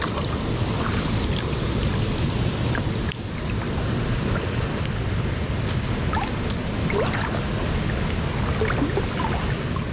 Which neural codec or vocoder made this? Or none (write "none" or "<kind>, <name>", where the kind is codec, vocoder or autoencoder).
none